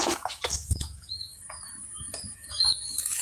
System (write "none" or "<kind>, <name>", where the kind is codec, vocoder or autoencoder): autoencoder, DAC-VAE